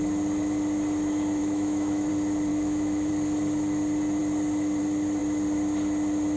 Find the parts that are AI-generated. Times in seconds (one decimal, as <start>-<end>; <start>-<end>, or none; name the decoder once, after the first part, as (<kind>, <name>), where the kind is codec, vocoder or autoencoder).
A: 1.4-2.1 (autoencoder, DAC-VAE); 2.5-3.1